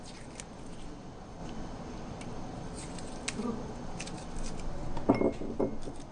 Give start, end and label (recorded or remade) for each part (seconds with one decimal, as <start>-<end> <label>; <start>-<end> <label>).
0.0-6.1 recorded